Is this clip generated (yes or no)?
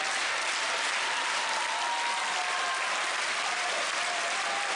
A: no